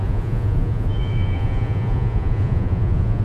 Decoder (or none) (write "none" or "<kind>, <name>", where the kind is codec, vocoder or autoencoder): vocoder, Vocos